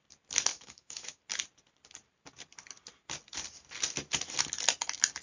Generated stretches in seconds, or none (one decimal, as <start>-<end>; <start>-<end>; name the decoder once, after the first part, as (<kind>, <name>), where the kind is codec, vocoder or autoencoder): 0.5-1.2 (autoencoder, DAC-VAE)